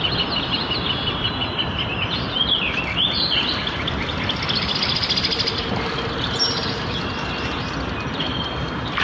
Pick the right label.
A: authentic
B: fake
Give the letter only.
A